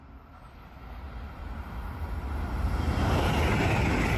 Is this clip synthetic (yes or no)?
no